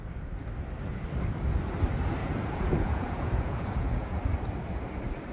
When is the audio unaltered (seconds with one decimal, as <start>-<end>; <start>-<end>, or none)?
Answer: 0.0-2.2; 4.2-5.3